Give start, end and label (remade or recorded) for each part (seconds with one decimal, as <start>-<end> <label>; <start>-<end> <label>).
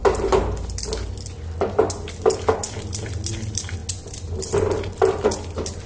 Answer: 0.0-5.9 recorded